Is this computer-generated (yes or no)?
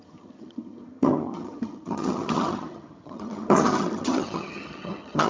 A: yes